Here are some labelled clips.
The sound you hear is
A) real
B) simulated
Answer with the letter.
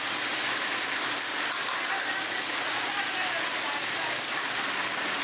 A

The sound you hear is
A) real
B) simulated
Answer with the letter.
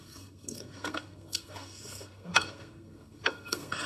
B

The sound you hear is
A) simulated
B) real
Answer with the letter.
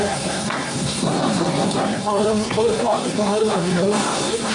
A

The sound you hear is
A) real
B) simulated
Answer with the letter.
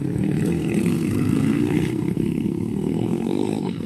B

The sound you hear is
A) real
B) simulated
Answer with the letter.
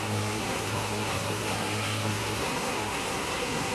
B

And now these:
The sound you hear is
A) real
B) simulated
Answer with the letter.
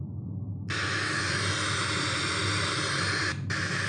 A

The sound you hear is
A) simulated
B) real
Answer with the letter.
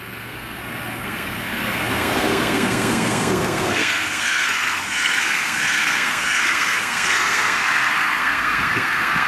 A